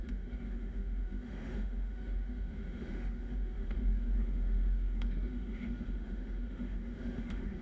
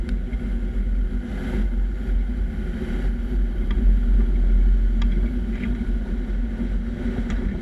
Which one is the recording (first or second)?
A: second